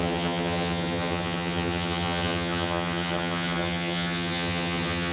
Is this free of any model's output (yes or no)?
no